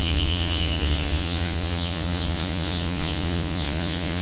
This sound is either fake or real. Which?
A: fake